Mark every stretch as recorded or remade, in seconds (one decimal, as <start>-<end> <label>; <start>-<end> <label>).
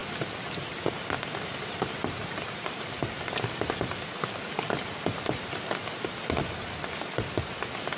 0.0-8.0 recorded